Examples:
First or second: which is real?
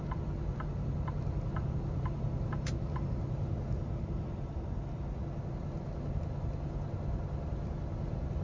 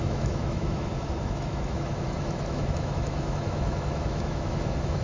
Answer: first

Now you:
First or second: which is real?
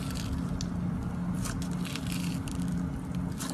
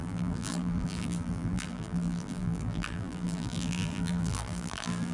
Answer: first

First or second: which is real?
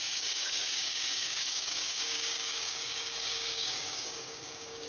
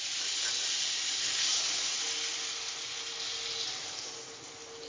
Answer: second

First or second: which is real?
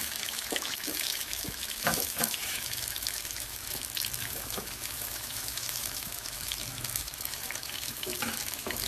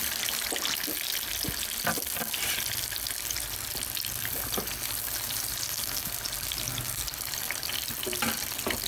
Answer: second